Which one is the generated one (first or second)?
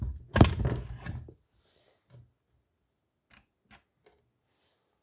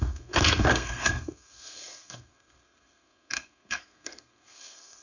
second